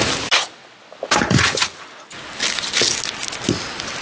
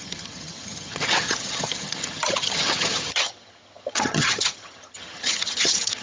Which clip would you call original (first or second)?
first